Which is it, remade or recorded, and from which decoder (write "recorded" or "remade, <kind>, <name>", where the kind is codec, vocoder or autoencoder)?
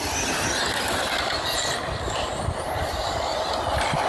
remade, vocoder, BigVGAN v2